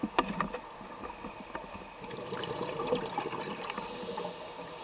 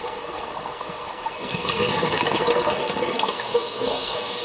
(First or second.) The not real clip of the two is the second